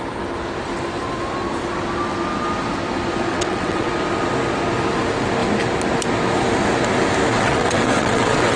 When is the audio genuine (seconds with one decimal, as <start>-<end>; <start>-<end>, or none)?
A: 0.0-3.3; 3.9-7.3

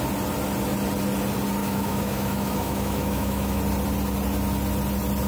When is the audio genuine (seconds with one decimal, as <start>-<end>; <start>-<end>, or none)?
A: 0.0-1.6; 3.6-5.3

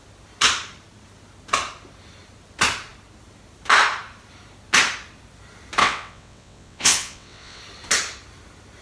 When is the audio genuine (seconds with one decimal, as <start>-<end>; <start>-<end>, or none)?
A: 0.0-5.8; 7.6-8.8

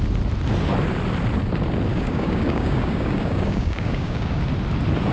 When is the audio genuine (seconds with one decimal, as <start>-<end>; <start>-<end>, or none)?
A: 0.0-1.9; 4.4-5.1

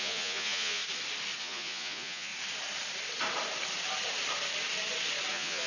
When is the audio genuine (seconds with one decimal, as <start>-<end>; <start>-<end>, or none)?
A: 0.8-1.4; 2.3-5.3